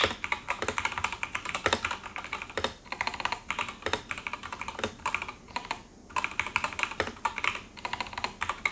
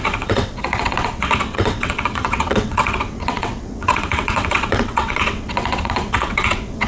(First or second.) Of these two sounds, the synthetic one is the second